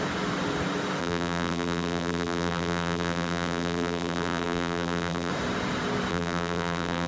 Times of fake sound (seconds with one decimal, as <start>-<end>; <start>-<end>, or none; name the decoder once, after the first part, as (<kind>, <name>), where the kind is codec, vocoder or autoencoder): 1.0-5.3 (vocoder, BigVGAN v2); 6.1-7.1